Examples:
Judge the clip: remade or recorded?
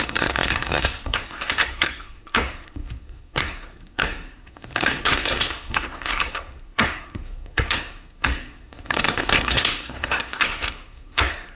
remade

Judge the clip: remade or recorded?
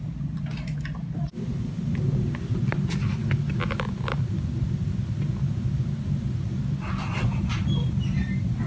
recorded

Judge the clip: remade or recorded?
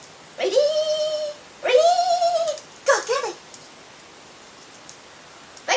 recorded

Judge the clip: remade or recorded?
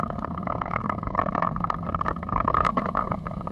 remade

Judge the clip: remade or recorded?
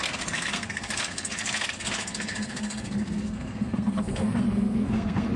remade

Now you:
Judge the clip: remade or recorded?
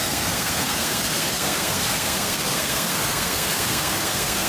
remade